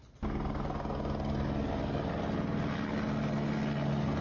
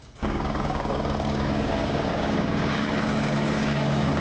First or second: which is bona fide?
first